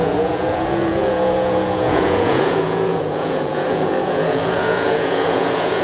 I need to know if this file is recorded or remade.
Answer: remade